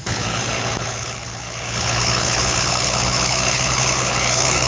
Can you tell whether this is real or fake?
fake